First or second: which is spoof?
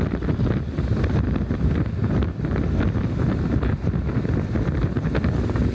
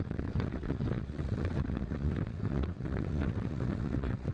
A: second